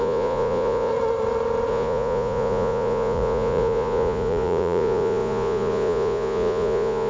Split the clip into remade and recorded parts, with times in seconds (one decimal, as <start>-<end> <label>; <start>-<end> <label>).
0.0-0.9 remade; 0.9-1.7 recorded; 1.7-7.1 remade